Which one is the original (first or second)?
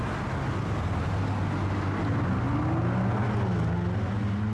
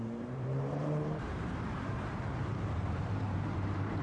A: first